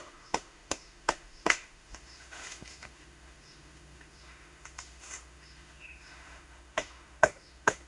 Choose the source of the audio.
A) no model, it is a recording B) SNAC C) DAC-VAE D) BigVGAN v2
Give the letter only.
C